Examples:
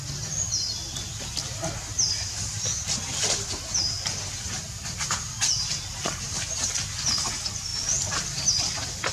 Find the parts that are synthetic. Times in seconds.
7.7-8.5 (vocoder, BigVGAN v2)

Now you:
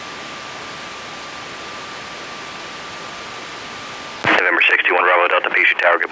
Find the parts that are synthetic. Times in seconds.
none

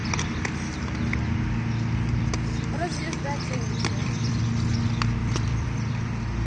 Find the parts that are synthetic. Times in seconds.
0.0-0.8 (vocoder, BigVGAN v2); 2.9-4.4; 5.2-5.9